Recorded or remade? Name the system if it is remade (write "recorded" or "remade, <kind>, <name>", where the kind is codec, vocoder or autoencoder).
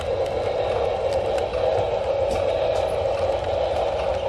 recorded